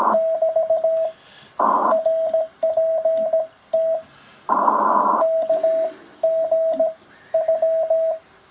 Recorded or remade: recorded